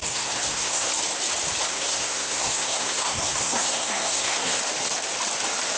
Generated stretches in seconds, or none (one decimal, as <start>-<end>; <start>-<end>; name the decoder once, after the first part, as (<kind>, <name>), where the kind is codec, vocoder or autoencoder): 0.0-0.9 (codec, SNAC); 1.7-4.6